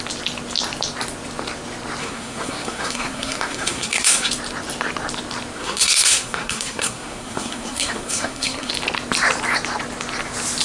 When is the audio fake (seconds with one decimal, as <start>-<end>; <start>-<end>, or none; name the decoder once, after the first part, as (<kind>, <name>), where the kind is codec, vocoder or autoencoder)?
2.0-4.3 (codec, SNAC); 5.5-8.7